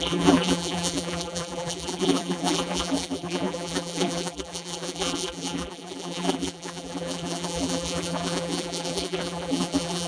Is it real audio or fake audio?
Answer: fake